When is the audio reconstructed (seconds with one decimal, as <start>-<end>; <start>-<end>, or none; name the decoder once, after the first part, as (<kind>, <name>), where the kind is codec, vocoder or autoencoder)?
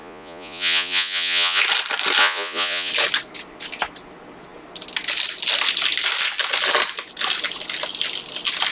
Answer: 0.0-1.6 (vocoder, Vocos); 2.2-2.9